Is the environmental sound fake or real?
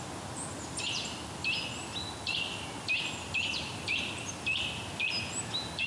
real